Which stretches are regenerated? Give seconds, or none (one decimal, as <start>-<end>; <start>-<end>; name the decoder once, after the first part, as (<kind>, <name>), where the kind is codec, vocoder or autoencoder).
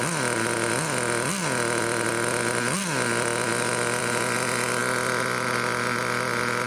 none